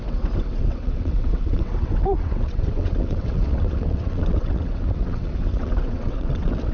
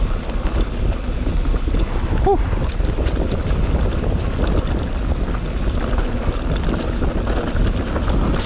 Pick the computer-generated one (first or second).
first